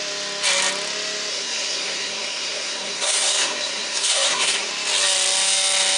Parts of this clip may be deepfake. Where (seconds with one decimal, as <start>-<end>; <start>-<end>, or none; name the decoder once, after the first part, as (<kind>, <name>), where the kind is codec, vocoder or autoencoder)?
1.3-4.7 (codec, SNAC)